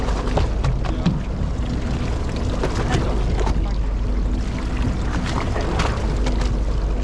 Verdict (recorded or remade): recorded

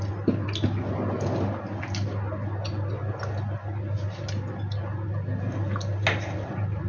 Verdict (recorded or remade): recorded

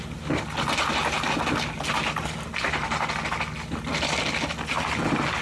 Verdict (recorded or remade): recorded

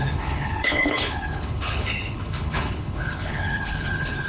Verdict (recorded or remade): remade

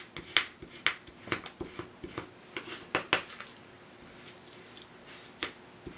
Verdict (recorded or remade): recorded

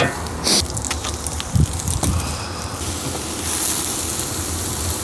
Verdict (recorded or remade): recorded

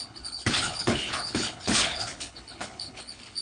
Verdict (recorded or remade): remade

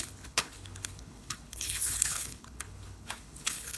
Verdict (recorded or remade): remade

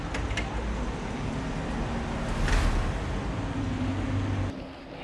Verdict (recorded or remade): recorded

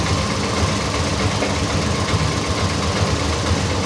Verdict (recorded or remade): recorded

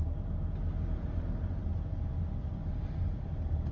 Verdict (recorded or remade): recorded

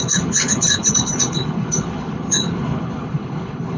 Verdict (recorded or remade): remade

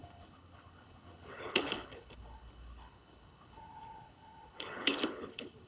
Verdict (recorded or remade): remade